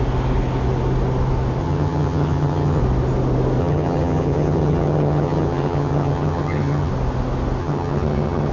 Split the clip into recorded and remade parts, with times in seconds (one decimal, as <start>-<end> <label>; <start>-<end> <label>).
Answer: 0.0-1.6 recorded; 1.6-2.8 remade; 2.8-3.6 recorded; 3.6-6.9 remade; 6.9-7.6 recorded; 7.6-8.5 remade